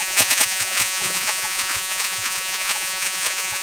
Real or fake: fake